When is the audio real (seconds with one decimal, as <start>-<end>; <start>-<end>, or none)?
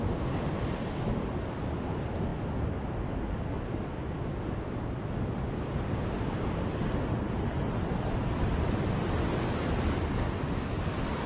0.0-11.3